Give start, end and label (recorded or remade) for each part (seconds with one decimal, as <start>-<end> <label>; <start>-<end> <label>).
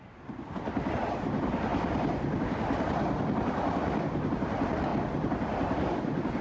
0.0-6.4 recorded